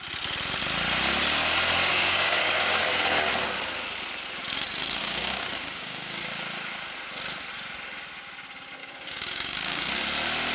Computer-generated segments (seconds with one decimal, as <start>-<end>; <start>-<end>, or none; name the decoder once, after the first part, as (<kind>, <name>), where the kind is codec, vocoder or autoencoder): 1.9-3.3 (codec, DAC); 5.0-6.2; 8.8-9.9